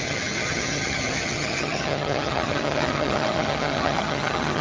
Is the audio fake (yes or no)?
yes